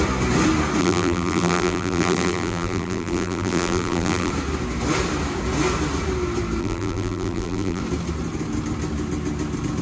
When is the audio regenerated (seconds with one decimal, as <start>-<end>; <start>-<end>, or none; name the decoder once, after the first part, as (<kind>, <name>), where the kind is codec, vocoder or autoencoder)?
0.8-4.3 (vocoder, BigVGAN v2); 6.6-7.8